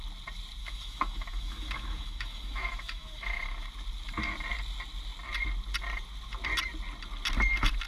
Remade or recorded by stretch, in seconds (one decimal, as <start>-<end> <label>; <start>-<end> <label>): 0.0-0.6 recorded; 0.6-3.7 remade; 3.7-7.9 recorded